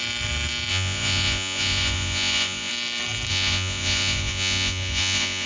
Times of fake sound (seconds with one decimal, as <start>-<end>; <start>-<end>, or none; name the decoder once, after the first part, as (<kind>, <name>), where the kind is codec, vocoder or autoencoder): 0.7-2.7 (vocoder, Vocos); 3.3-5.5